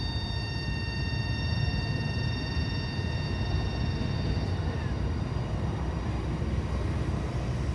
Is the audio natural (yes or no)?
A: yes